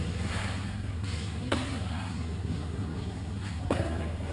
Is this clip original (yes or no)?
no